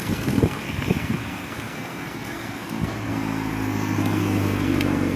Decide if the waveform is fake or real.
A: fake